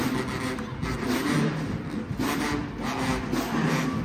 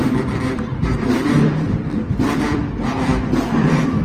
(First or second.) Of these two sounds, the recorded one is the first